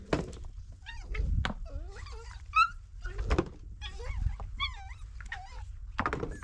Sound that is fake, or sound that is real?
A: real